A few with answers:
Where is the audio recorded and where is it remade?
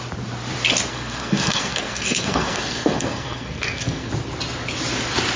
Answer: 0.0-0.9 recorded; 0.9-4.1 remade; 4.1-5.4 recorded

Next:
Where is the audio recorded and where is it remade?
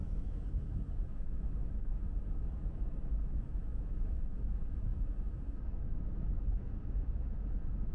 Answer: 0.0-7.9 remade